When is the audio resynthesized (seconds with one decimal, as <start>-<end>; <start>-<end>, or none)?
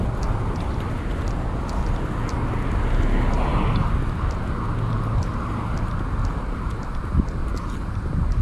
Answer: none